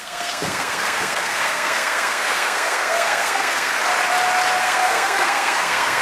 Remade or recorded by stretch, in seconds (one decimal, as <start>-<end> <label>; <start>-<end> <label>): 0.0-3.8 remade; 3.8-4.6 recorded; 4.6-6.0 remade